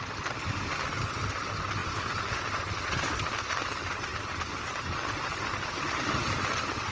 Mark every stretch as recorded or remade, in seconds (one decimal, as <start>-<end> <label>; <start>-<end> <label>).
0.0-6.9 recorded